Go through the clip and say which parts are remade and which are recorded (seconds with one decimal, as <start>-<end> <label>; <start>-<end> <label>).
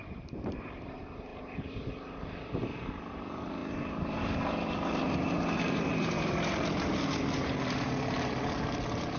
0.0-9.2 remade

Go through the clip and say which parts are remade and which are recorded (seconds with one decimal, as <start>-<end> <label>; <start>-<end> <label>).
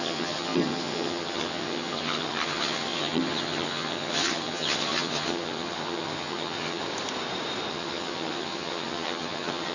0.0-6.9 remade; 6.9-7.7 recorded; 7.7-9.7 remade